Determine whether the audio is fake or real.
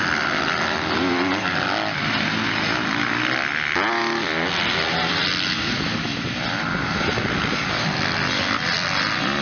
real